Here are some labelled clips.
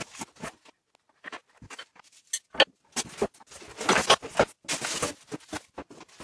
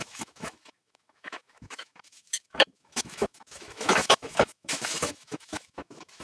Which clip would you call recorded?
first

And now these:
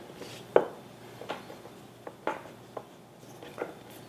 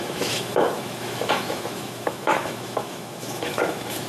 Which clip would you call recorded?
first